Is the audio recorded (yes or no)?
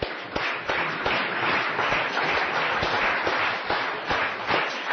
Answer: yes